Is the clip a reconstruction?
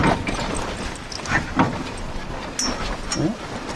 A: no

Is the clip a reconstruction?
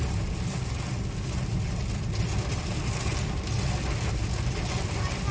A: no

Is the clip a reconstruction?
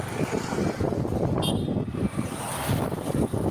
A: no